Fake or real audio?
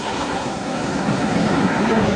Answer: fake